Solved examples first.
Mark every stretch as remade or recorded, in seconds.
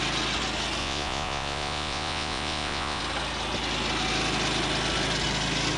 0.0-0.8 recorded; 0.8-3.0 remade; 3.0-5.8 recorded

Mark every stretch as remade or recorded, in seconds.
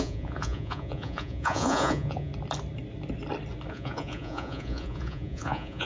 0.0-2.3 remade; 2.3-3.7 recorded; 3.7-5.9 remade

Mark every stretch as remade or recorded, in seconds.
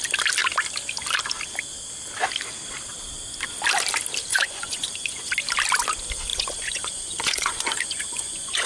0.0-4.3 recorded; 4.3-5.3 remade; 5.3-6.3 recorded; 6.3-8.7 remade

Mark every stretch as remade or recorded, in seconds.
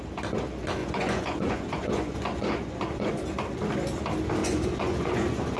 0.0-0.8 recorded; 0.8-3.1 remade; 3.1-4.4 recorded; 4.4-5.6 remade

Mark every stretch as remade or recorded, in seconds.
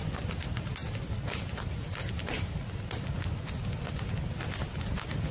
0.0-5.3 recorded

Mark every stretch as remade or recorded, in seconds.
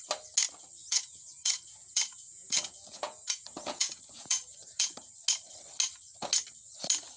0.0-0.8 recorded; 0.8-5.1 remade; 5.1-7.2 recorded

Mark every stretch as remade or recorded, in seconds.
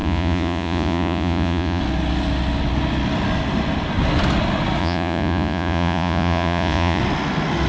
0.0-1.8 remade; 1.8-4.8 recorded; 4.8-7.0 remade; 7.0-7.7 recorded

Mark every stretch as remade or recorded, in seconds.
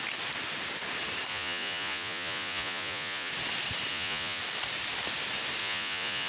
0.0-1.3 recorded; 1.3-3.3 remade; 3.3-3.9 recorded; 3.9-4.4 remade; 4.4-5.6 recorded; 5.6-6.3 remade